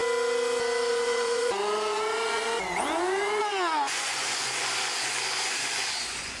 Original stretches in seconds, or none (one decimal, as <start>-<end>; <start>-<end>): 0.0-0.9